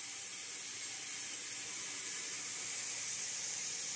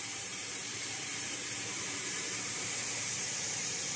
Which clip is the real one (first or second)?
first